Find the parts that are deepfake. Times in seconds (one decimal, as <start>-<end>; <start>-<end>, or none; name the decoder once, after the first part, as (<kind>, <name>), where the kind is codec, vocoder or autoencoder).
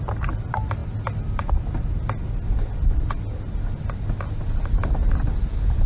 none